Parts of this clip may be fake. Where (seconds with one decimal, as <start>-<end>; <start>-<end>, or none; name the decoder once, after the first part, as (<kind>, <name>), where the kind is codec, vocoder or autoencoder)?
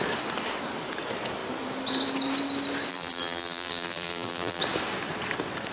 2.9-4.6 (vocoder, BigVGAN v2)